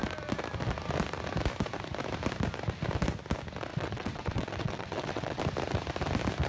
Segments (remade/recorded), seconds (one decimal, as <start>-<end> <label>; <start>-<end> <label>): 0.0-3.7 recorded; 3.7-5.4 remade; 5.4-6.5 recorded